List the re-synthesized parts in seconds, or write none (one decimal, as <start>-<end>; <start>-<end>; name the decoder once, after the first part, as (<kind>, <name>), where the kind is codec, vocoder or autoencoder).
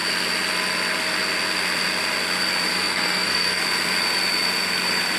2.7-3.6 (codec, SNAC)